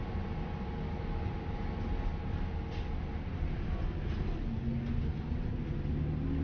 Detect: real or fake real